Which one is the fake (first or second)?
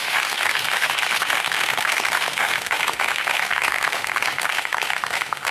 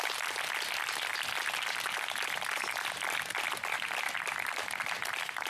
first